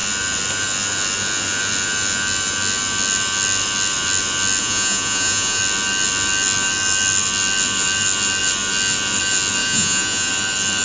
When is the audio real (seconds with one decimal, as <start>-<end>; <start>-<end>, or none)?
0.0-4.6; 5.6-9.6; 10.3-10.8